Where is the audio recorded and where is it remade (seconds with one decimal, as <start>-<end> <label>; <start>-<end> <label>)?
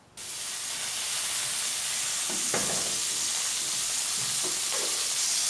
0.0-5.5 recorded